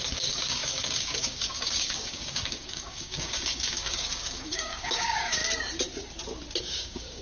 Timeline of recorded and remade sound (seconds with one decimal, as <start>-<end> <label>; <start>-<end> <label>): 0.0-5.4 remade; 5.4-6.6 recorded; 6.6-7.2 remade